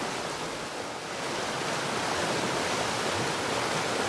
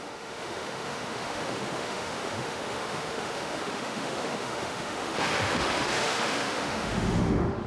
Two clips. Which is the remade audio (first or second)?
second